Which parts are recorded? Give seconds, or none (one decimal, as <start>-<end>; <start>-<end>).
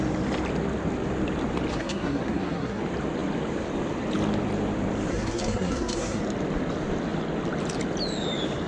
0.0-1.7; 2.8-5.1; 6.2-8.7